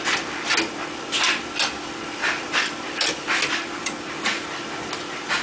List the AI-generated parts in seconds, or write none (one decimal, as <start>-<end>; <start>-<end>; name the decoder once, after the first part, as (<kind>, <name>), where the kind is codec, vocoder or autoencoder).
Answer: 2.2-3.8 (vocoder, BigVGAN v2)